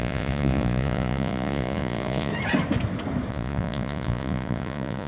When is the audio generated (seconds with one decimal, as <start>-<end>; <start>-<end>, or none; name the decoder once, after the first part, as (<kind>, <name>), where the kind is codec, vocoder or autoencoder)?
0.0-2.3 (vocoder, Vocos); 3.3-5.1